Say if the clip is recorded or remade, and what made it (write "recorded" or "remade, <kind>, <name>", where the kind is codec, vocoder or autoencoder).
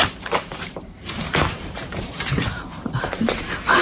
remade, vocoder, BigVGAN v2